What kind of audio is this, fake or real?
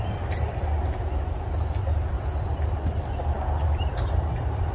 real